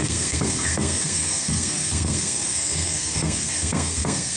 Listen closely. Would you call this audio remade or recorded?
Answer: remade